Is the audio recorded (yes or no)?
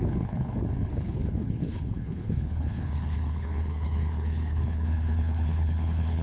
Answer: no